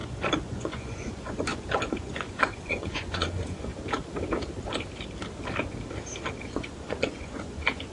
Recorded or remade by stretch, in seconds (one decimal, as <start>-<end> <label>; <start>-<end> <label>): 0.0-3.7 remade; 3.7-6.4 recorded; 6.4-7.9 remade